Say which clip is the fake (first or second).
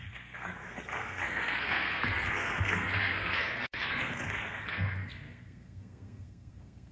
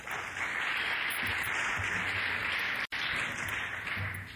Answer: first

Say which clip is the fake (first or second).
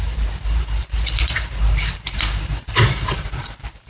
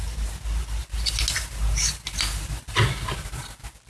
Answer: first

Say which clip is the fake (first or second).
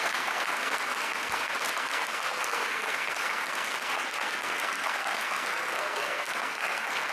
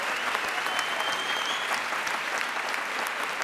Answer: first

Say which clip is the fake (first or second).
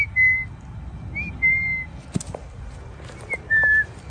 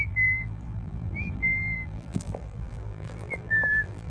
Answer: second